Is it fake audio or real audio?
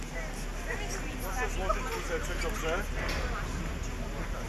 real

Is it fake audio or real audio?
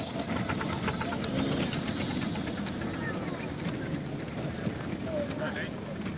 real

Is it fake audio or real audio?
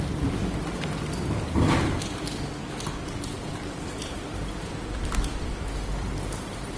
real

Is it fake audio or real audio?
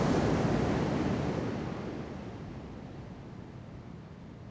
real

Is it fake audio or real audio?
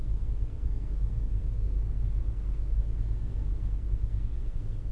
fake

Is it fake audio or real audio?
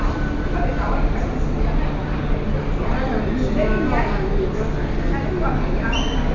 real